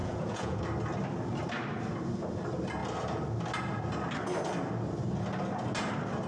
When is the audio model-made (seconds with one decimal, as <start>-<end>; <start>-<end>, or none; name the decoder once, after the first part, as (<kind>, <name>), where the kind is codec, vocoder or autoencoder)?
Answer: 0.0-0.6 (vocoder, Vocos)